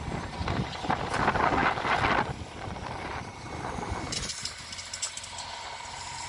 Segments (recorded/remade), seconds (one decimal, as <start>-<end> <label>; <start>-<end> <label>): 0.0-6.3 recorded